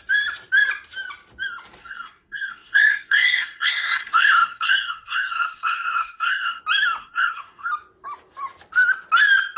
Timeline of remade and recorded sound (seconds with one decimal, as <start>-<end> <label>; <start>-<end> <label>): 0.0-1.8 recorded; 1.8-6.6 remade; 6.6-7.0 recorded; 7.0-7.7 remade; 7.7-9.6 recorded